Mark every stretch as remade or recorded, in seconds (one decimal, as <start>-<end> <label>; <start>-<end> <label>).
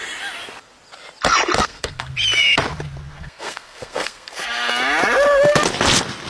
0.0-1.6 recorded; 1.6-2.1 remade; 2.1-3.1 recorded; 3.1-4.7 remade; 4.7-6.3 recorded